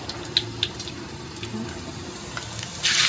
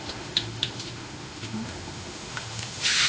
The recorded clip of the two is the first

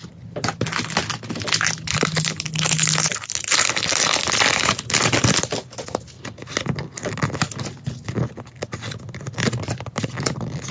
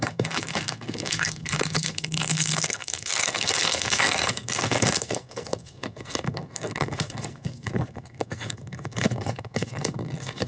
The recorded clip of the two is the first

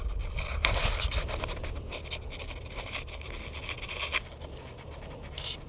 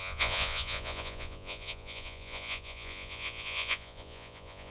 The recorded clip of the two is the first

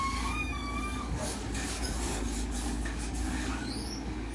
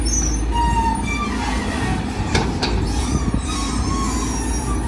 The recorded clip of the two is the second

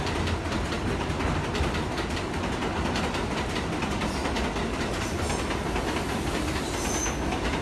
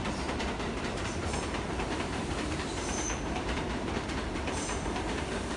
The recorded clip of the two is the first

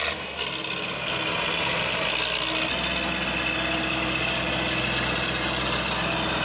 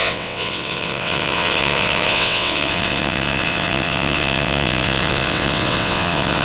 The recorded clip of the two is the first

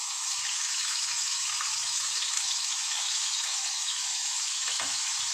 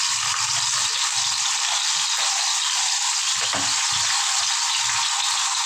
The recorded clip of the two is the second